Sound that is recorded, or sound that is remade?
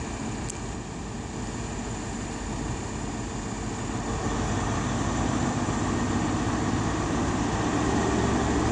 recorded